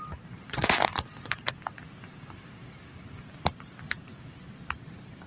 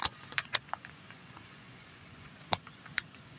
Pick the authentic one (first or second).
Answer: first